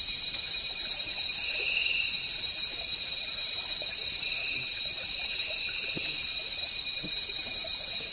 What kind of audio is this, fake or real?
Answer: fake